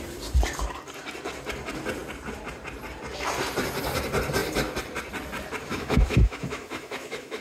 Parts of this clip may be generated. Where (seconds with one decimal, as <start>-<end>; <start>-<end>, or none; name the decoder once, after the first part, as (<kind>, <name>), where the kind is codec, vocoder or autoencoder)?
5.7-7.4 (autoencoder, DAC-VAE)